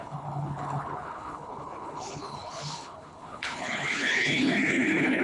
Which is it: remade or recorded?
remade